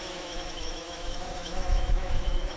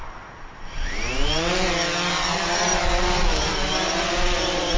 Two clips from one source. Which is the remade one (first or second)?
first